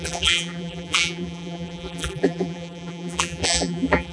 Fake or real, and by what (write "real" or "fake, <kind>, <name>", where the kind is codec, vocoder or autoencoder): fake, vocoder, BigVGAN v2